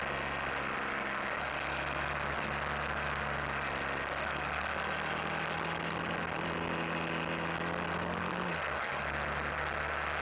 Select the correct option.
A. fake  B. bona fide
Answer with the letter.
B